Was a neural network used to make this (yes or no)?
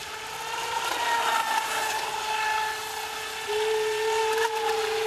no